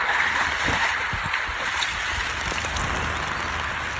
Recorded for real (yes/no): yes